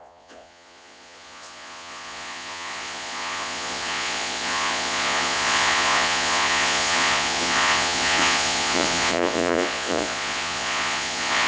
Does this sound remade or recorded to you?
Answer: remade